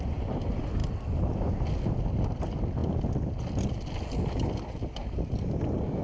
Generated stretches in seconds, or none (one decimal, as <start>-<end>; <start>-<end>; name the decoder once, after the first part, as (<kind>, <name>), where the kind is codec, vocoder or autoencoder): none